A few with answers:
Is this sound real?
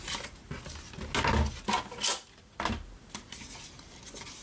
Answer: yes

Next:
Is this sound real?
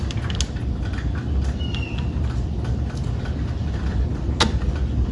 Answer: yes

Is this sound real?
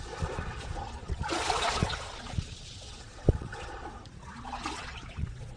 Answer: no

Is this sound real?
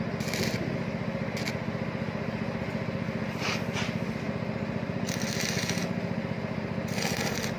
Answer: yes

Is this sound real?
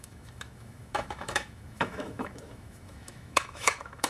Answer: no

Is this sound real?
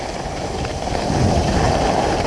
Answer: yes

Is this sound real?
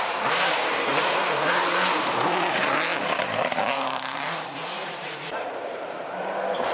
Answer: no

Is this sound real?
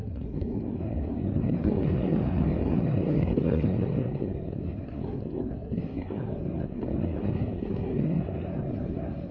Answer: no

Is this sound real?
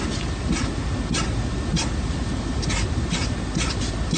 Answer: yes